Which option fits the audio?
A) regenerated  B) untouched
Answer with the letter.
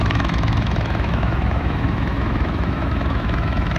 A